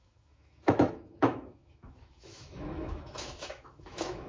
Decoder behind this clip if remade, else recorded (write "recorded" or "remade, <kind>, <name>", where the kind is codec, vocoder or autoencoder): remade, autoencoder, DAC-VAE